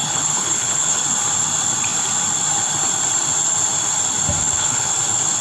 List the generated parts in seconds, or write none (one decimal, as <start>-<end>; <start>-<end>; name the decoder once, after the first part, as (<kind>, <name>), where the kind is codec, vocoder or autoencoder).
0.0-1.0 (codec, HILCodec); 4.4-4.9